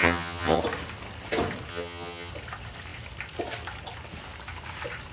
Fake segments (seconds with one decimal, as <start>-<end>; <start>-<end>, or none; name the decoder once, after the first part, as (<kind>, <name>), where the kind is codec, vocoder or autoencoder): 0.0-0.6 (vocoder, HiFi-GAN); 1.7-2.3